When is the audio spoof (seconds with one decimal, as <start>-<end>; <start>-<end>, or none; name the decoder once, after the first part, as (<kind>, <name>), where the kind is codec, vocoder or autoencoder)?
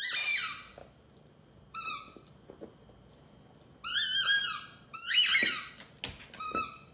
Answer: 0.8-2.3 (vocoder, BigVGAN v2)